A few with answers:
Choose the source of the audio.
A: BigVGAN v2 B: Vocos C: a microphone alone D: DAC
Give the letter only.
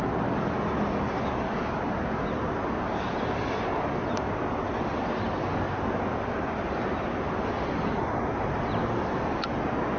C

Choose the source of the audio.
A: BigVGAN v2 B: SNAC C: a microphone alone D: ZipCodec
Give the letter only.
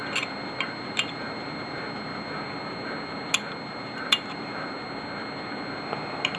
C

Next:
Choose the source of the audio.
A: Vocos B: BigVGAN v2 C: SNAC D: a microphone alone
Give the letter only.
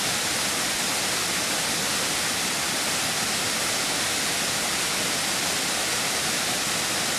D